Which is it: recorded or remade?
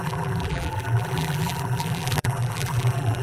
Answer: remade